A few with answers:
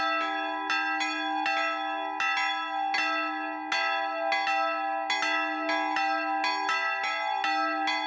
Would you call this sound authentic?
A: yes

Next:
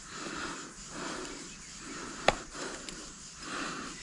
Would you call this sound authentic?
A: yes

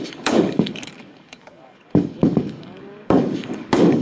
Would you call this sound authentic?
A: no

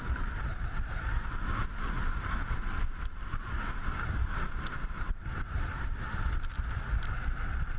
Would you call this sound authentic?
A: yes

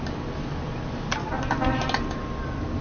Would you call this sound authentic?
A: yes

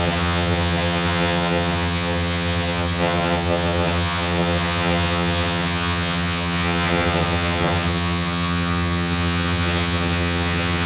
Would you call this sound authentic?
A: no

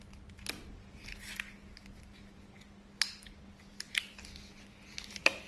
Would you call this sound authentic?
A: yes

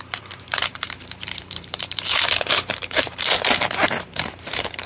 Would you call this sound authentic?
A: no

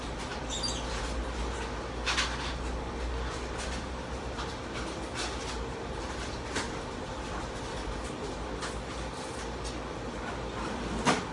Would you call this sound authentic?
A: yes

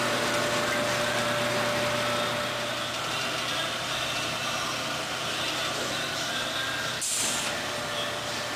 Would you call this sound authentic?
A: yes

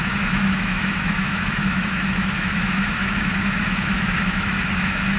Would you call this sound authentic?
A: no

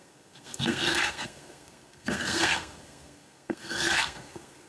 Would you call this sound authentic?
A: no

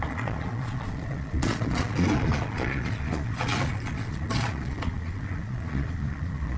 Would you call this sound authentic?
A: no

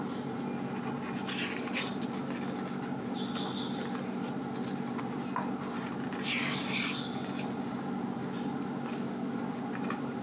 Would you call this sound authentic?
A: yes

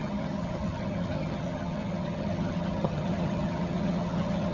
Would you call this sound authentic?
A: no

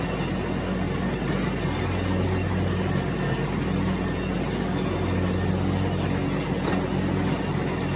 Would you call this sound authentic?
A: yes